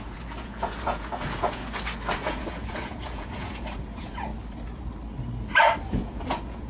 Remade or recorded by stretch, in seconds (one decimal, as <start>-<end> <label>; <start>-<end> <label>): 0.0-1.6 remade; 1.6-2.1 recorded; 2.1-4.3 remade; 4.3-5.9 recorded; 5.9-6.7 remade